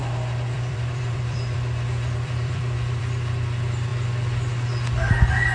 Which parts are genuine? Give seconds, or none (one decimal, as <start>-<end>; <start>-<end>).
3.0-5.5

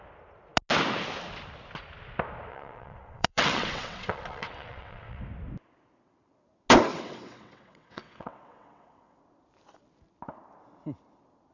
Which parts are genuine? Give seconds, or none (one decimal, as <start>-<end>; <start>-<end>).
0.0-2.5; 5.2-6.9; 9.2-11.5

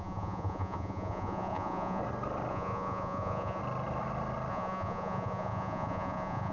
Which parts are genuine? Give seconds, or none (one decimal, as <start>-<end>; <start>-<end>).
2.0-2.5; 3.6-4.5